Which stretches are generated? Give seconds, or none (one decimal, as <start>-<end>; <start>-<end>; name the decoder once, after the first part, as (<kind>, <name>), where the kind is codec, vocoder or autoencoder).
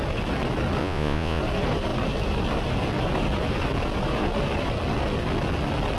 0.8-1.4 (vocoder, Vocos)